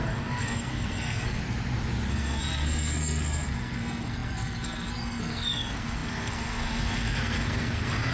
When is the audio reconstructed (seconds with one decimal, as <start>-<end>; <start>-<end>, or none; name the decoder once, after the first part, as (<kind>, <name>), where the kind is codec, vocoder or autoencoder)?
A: 0.0-1.4 (codec, SNAC); 2.1-8.1